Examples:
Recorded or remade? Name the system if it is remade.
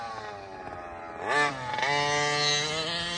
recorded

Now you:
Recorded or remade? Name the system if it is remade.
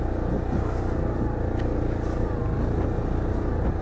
recorded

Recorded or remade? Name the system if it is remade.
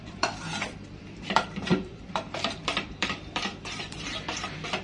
remade, vocoder, BigVGAN v2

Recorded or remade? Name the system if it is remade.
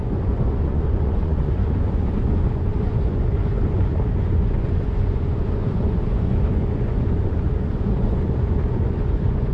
remade, vocoder, Vocos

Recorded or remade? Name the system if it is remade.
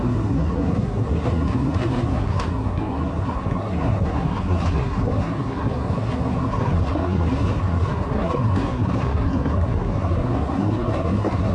remade, codec, SNAC